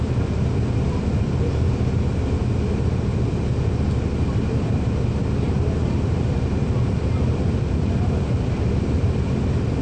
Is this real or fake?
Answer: fake